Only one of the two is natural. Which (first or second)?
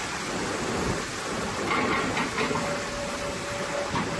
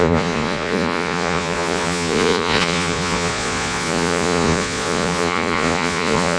first